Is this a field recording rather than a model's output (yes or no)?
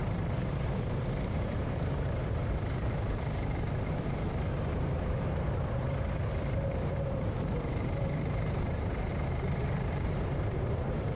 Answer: no